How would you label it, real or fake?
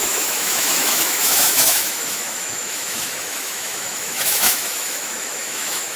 fake